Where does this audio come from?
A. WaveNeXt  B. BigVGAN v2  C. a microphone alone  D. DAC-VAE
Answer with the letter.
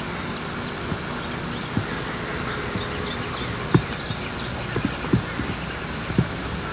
C